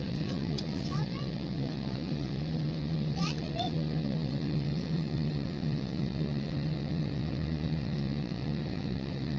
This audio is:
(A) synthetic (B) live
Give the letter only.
A